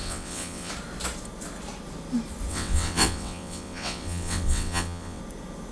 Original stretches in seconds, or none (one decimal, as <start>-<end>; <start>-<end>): 0.7-2.5; 5.2-5.7

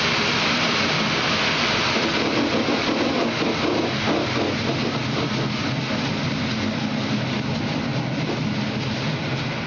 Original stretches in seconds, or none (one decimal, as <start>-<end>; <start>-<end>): 0.0-9.7

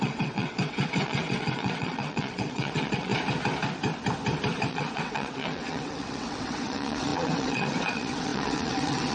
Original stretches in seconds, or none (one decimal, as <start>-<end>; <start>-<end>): 3.1-4.7

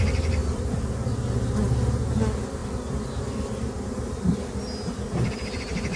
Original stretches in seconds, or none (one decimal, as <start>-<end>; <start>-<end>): 0.0-6.0